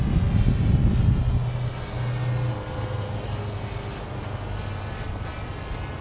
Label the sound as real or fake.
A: real